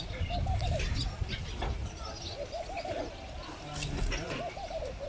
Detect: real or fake real